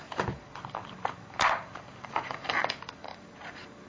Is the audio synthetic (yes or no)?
yes